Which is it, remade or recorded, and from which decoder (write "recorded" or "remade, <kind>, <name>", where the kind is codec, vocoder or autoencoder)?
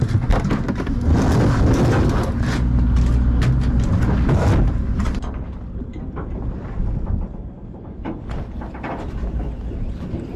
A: recorded